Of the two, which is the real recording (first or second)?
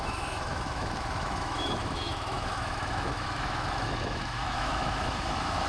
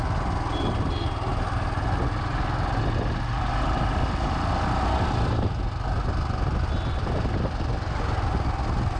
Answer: second